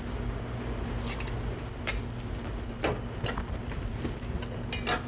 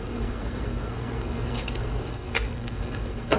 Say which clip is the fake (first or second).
second